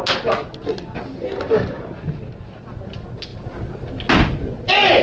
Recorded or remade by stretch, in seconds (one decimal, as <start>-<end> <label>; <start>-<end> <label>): 0.0-5.0 recorded